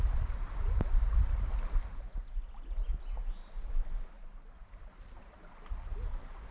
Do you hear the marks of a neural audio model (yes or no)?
no